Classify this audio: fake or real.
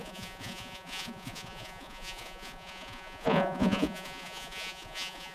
fake